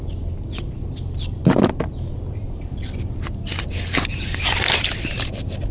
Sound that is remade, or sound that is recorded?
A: recorded